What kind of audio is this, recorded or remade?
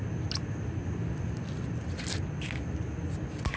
recorded